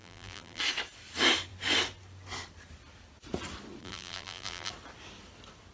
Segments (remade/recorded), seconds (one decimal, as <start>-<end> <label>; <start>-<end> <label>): 0.0-0.6 remade; 0.6-3.8 recorded; 3.8-4.7 remade; 4.7-5.7 recorded